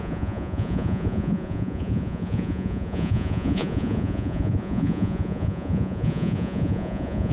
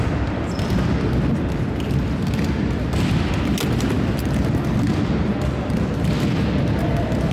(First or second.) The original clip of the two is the second